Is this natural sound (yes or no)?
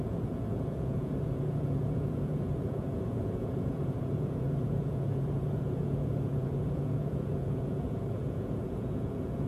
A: no